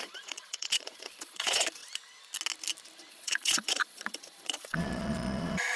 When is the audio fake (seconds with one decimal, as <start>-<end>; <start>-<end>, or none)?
0.0-1.8; 3.1-5.8